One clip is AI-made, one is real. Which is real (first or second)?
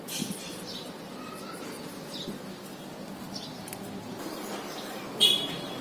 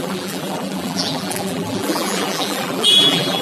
first